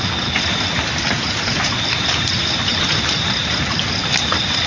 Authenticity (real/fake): real